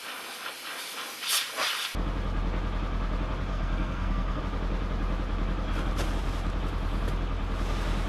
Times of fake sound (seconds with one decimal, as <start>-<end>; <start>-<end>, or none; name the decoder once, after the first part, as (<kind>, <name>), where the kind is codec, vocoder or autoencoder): 3.5-4.4 (codec, SNAC)